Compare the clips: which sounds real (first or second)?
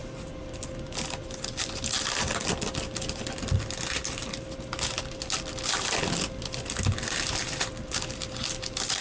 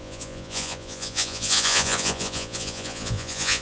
first